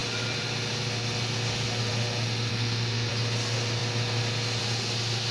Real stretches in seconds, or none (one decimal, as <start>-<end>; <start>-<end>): 0.0-2.5; 3.1-5.3